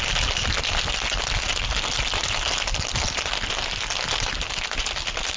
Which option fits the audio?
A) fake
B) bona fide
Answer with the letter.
B